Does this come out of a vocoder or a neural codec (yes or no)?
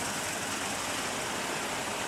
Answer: no